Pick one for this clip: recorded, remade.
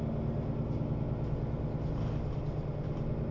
recorded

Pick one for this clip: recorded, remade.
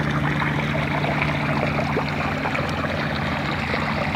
recorded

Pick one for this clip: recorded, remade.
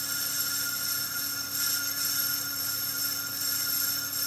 recorded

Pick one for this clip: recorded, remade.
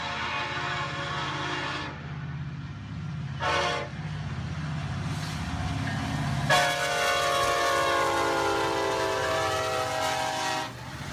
recorded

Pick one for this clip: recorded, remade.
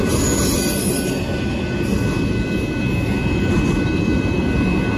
recorded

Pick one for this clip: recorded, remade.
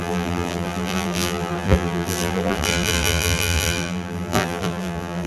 remade